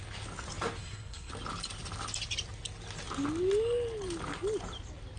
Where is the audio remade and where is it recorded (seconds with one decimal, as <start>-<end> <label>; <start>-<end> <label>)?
0.0-0.8 recorded; 0.8-1.3 remade; 1.3-5.2 recorded